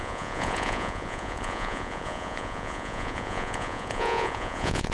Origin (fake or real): fake